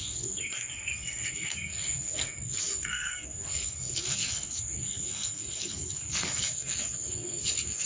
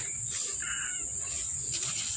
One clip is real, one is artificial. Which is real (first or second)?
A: second